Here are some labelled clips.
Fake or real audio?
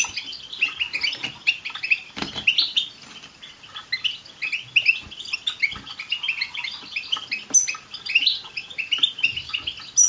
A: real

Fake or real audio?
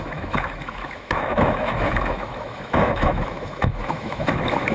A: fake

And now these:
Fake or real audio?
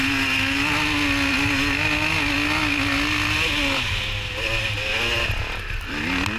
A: real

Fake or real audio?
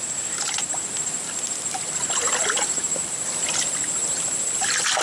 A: real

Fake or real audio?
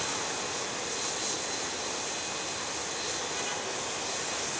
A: real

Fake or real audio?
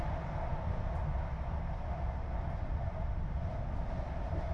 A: real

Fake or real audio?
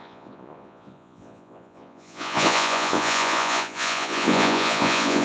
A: fake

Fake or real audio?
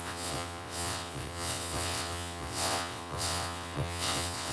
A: fake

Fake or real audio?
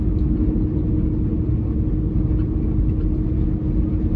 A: real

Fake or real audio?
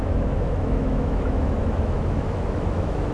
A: fake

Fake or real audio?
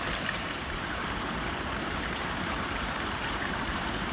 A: fake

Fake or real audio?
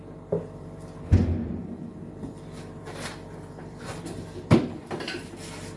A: fake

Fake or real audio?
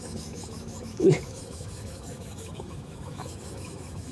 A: fake